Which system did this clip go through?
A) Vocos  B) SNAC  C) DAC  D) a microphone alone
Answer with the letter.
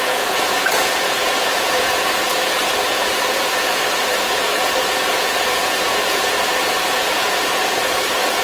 A